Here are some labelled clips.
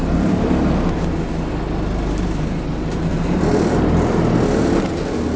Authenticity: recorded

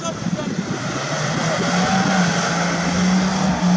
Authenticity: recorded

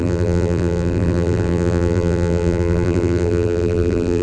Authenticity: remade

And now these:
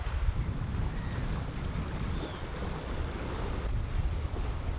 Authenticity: remade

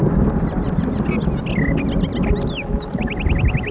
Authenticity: recorded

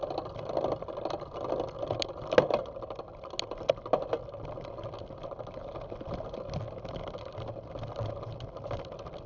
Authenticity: recorded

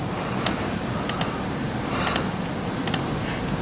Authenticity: recorded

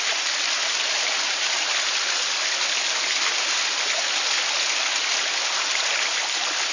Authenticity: recorded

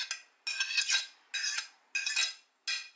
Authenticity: recorded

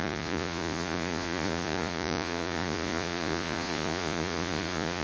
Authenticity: remade